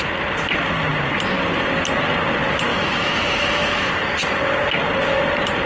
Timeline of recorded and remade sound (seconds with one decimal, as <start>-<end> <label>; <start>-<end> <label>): 0.0-2.7 recorded; 2.7-3.9 remade; 3.9-5.7 recorded